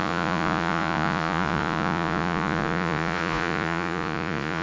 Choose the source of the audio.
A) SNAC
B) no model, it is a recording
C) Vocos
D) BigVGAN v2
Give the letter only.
C